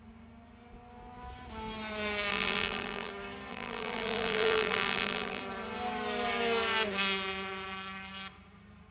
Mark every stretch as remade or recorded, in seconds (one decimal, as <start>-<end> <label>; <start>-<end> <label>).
0.0-2.3 recorded; 2.3-3.1 remade; 3.1-3.5 recorded; 3.5-5.4 remade; 5.4-8.9 recorded